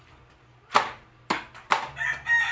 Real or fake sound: real